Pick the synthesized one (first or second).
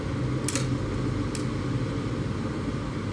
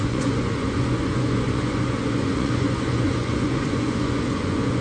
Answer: second